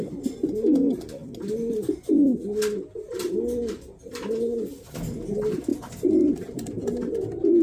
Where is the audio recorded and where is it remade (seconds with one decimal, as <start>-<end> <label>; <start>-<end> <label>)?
0.0-7.6 recorded